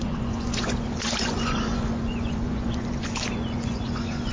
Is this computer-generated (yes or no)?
yes